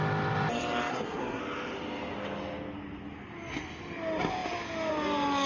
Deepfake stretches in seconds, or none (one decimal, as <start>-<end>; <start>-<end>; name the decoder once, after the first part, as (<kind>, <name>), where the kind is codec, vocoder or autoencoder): 0.9-1.4 (codec, SNAC)